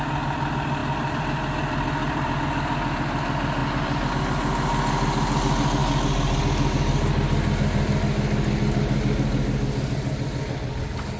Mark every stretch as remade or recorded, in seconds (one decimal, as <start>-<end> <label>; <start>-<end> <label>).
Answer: 0.0-0.8 recorded; 0.8-2.4 remade; 2.4-3.6 recorded; 3.6-4.1 remade; 4.1-11.2 recorded